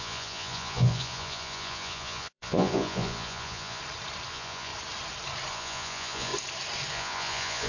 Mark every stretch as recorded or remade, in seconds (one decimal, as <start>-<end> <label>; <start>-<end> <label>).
0.0-3.8 remade; 3.8-4.3 recorded; 4.3-4.7 remade; 4.7-5.5 recorded; 5.5-6.3 remade; 6.3-6.9 recorded; 6.9-7.7 remade